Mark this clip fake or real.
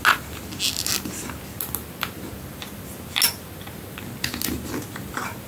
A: real